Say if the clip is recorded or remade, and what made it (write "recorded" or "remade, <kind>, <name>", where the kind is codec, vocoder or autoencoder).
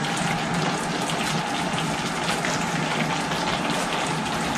recorded